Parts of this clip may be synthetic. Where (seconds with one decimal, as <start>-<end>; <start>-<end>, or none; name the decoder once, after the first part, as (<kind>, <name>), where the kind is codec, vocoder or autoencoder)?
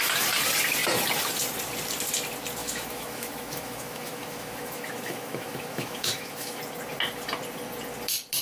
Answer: 2.6-6.6 (autoencoder, DAC-VAE)